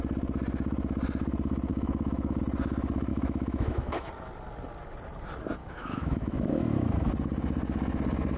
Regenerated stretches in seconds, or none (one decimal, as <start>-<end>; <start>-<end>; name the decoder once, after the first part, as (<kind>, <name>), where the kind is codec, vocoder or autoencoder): 1.7-2.4 (autoencoder, DAC-VAE); 3.1-4.1; 5.6-7.1